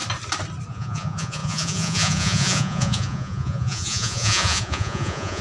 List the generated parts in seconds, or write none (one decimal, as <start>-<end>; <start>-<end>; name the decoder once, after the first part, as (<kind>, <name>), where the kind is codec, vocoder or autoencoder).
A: 0.7-5.4 (vocoder, Vocos)